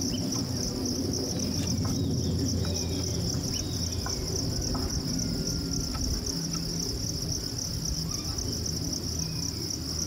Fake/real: real